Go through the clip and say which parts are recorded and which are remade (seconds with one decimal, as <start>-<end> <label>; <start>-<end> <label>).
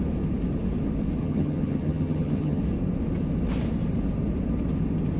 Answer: 0.0-1.2 recorded; 1.2-2.6 remade; 2.6-5.2 recorded